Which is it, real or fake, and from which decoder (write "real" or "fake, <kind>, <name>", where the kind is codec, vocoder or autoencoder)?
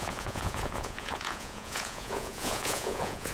fake, vocoder, Vocos